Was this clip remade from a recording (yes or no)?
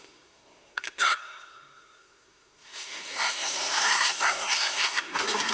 yes